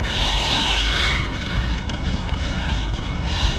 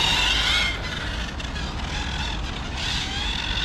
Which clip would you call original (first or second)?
second